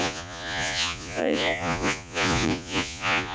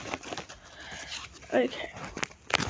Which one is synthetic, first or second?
first